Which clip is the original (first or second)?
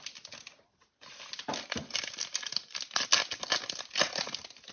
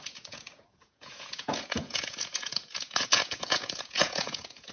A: first